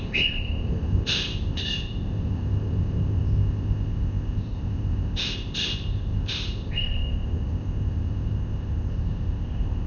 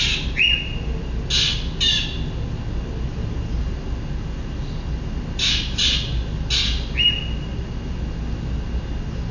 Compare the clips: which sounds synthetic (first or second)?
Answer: first